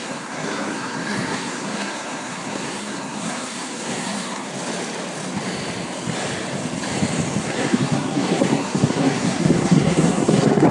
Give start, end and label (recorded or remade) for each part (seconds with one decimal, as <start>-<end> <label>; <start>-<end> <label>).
0.0-4.5 remade; 4.5-7.4 recorded; 7.4-10.7 remade